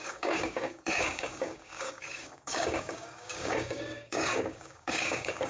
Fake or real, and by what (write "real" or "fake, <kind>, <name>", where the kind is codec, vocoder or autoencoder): fake, codec, DAC